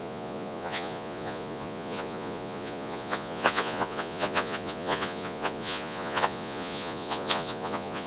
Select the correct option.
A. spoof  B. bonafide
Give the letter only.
A